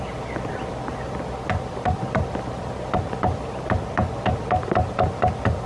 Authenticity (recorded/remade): recorded